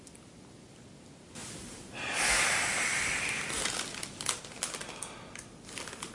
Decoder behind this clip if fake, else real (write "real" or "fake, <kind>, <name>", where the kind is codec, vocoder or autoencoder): real